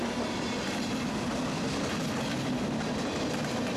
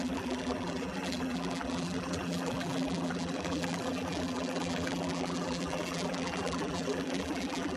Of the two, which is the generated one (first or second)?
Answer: second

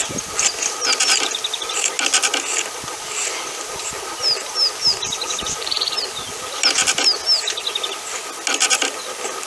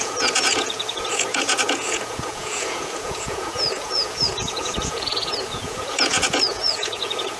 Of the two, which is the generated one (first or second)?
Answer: second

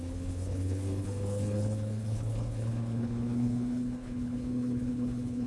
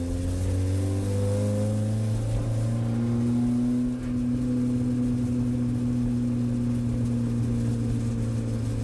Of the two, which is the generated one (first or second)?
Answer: first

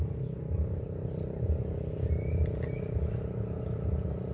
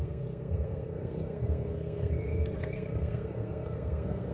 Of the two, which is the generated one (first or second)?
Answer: second